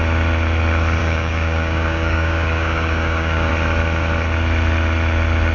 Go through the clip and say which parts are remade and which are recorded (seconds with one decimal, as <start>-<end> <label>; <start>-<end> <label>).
0.0-1.0 recorded; 1.0-3.5 remade; 3.5-5.5 recorded